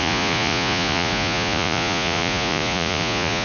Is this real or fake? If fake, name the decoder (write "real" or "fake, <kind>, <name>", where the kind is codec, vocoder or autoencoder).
fake, vocoder, Vocos